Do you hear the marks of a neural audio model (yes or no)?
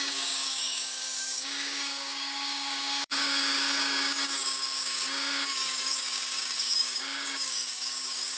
yes